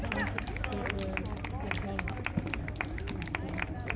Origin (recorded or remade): recorded